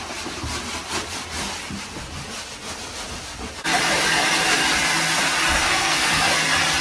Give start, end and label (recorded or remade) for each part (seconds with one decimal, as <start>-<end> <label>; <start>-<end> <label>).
0.0-5.6 recorded; 5.6-6.3 remade; 6.3-6.8 recorded